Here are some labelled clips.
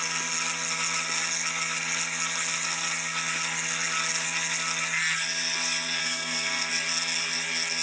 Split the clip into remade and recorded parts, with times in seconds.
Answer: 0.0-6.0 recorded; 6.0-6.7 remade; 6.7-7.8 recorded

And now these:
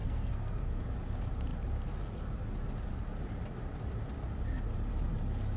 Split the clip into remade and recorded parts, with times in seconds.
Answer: 0.0-0.8 remade; 0.8-5.6 recorded